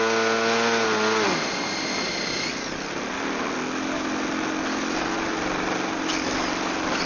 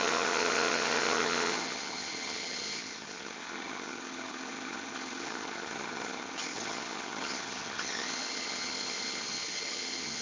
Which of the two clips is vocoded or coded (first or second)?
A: second